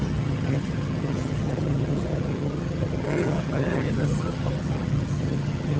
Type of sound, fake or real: fake